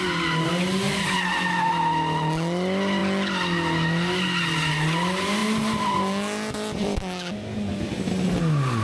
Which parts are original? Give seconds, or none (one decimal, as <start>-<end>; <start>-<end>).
0.0-8.8